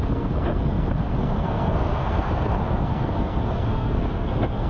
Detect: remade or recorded remade